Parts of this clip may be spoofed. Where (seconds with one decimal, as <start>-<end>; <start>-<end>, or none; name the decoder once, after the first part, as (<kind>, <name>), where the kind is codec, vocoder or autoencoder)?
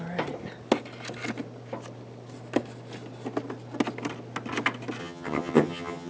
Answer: 5.0-6.1 (vocoder, HiFi-GAN)